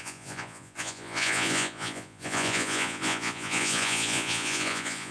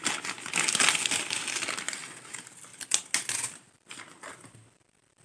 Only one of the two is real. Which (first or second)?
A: second